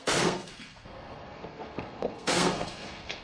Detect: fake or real fake